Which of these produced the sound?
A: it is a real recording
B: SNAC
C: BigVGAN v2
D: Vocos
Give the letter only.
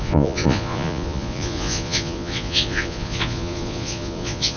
D